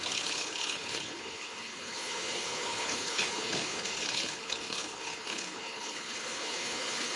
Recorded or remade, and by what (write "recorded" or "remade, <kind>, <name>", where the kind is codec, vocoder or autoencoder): remade, codec, HILCodec